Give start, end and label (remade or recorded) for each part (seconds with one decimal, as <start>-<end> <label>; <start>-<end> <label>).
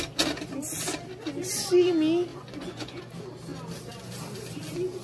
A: 0.0-2.3 recorded; 2.3-3.0 remade; 3.0-5.0 recorded